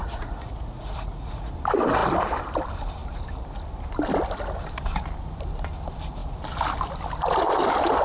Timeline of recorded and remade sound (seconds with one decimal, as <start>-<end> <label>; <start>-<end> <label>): 0.0-1.5 remade; 1.5-8.0 recorded

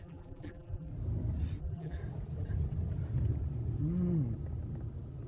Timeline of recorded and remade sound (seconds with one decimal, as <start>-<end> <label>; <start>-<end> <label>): 0.0-0.9 remade; 0.9-1.6 recorded; 1.6-2.0 remade; 2.0-5.3 recorded

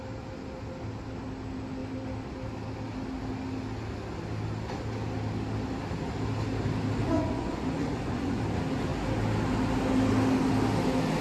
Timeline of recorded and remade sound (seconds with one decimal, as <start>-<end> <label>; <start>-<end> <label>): 0.0-7.0 recorded; 7.0-8.4 remade; 8.4-11.2 recorded